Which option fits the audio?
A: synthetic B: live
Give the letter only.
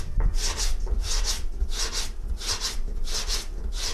B